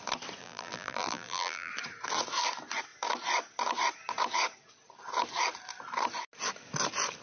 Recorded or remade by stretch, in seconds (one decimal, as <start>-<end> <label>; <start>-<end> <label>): 0.0-0.4 recorded; 0.4-1.7 remade; 1.7-7.2 recorded